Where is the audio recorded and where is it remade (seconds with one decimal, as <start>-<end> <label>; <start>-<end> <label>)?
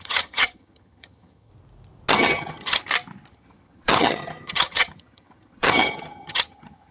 0.0-1.5 remade; 1.5-2.1 recorded; 2.1-2.8 remade; 2.8-3.3 recorded; 3.3-6.9 remade